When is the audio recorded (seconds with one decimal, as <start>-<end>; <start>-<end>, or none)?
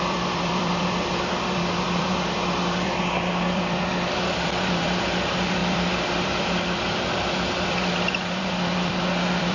none